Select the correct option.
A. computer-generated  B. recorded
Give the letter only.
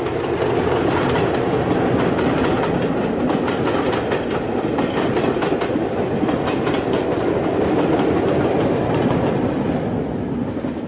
B